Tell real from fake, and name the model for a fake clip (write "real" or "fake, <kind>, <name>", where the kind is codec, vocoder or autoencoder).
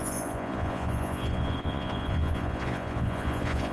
fake, vocoder, Vocos